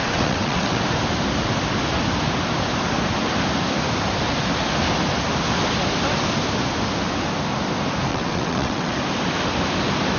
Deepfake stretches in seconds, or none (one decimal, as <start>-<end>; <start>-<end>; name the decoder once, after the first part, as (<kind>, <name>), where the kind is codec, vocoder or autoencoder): 0.0-0.8 (vocoder, WaveNeXt); 8.1-8.9